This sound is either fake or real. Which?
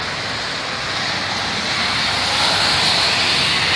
real